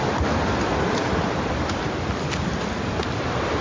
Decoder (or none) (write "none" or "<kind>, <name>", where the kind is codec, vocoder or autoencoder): none